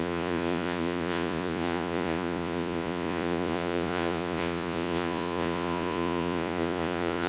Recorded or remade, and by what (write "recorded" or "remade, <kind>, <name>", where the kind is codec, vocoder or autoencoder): remade, vocoder, Vocos